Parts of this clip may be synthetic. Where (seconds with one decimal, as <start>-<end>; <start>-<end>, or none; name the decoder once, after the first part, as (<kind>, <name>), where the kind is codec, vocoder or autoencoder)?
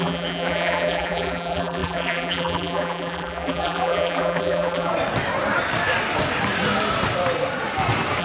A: 0.0-4.9 (vocoder, BigVGAN v2)